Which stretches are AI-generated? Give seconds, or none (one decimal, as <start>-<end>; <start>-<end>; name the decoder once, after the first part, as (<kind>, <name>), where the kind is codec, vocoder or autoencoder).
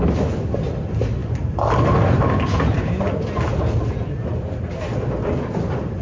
none